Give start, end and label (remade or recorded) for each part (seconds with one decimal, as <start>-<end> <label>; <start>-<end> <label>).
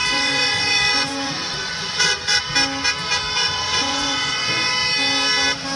0.0-2.4 remade; 2.4-3.4 recorded; 3.4-4.7 remade; 4.7-5.8 recorded